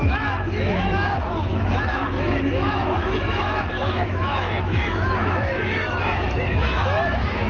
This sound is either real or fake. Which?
fake